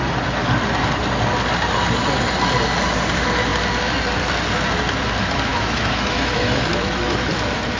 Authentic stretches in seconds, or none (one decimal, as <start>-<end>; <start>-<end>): 0.0-5.5; 7.3-7.8